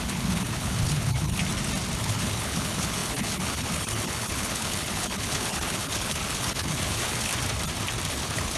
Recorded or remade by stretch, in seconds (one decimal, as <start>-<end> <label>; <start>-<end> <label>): 0.0-1.4 remade; 1.4-2.0 recorded; 2.0-7.3 remade; 7.3-8.1 recorded; 8.1-8.6 remade